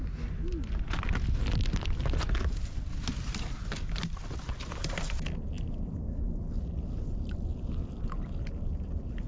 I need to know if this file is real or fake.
real